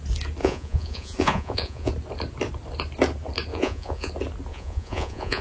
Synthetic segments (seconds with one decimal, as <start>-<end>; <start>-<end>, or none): 0.4-1.9; 3.5-4.1; 4.5-5.4